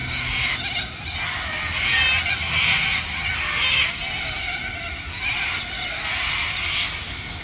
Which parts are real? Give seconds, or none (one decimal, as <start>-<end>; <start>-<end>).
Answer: 0.0-7.4

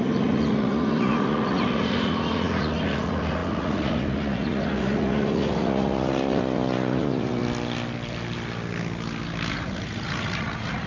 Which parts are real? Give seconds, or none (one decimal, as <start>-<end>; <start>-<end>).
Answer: 7.4-9.5

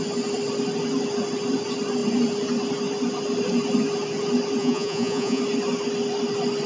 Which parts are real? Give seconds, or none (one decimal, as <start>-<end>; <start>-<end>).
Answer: 0.0-4.6; 5.4-6.7

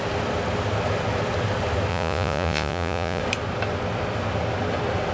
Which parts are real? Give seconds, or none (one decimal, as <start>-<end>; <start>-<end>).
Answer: 0.0-1.9; 3.2-5.1